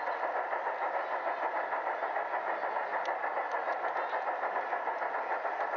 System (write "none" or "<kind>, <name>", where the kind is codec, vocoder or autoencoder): none